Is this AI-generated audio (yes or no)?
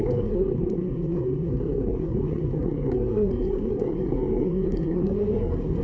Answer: yes